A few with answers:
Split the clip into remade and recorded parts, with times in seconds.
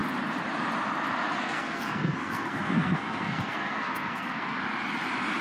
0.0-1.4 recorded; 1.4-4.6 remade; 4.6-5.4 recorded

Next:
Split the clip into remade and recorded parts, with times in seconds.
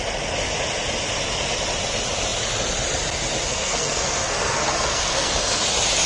0.0-3.5 recorded; 3.5-5.6 remade; 5.6-6.1 recorded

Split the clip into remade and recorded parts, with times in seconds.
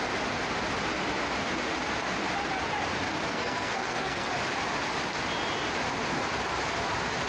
0.0-3.3 recorded; 3.3-4.3 remade; 4.3-7.3 recorded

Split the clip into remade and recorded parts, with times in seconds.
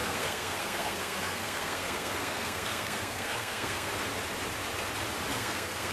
0.0-3.9 remade; 3.9-5.3 recorded; 5.3-5.9 remade